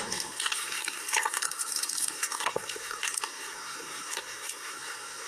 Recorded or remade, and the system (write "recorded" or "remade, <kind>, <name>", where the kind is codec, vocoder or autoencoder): remade, codec, SNAC